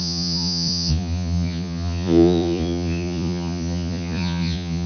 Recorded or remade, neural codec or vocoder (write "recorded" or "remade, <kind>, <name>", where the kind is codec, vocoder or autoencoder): remade, vocoder, Vocos